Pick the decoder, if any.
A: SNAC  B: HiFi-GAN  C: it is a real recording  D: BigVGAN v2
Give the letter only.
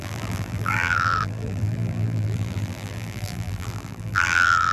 D